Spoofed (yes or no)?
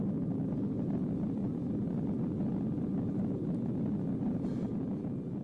no